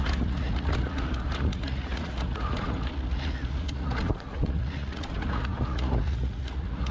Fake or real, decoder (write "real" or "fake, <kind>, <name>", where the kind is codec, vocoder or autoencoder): fake, vocoder, Vocos